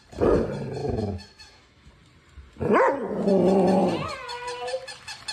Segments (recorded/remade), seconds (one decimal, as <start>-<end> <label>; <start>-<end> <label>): 0.0-0.8 recorded; 0.8-1.9 remade; 1.9-5.3 recorded

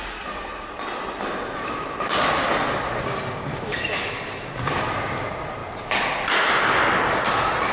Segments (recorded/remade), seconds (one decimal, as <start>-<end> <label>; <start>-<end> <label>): 0.0-3.5 recorded; 3.5-4.1 remade; 4.1-7.7 recorded

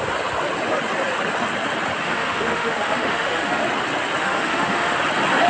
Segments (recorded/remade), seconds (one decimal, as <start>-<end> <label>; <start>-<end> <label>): 0.0-2.0 recorded; 2.0-3.6 remade; 3.6-4.2 recorded; 4.2-5.0 remade; 5.0-5.5 recorded

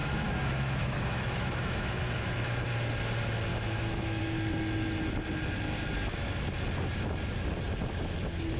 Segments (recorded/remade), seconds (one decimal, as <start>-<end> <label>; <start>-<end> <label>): 0.0-2.4 remade; 2.4-3.5 recorded; 3.5-4.2 remade; 4.2-8.6 recorded